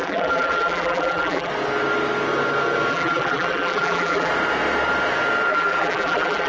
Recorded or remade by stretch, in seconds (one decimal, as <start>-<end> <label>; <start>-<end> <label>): 0.0-1.5 remade; 1.5-2.9 recorded; 2.9-4.3 remade; 4.3-5.5 recorded; 5.5-6.5 remade